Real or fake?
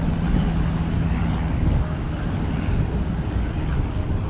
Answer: real